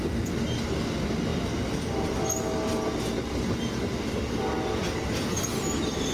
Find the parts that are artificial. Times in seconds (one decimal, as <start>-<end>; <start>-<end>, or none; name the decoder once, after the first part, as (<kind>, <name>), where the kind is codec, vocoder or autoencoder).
none